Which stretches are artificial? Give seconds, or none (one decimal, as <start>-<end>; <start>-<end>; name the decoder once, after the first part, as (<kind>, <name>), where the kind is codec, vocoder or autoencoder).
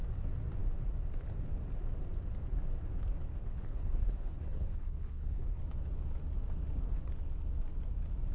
3.3-5.6 (codec, HILCodec)